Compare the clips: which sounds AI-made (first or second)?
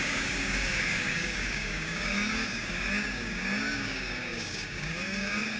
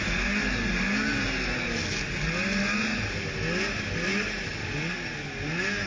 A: first